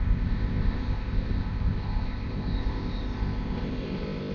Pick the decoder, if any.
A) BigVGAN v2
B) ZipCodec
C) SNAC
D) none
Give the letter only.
B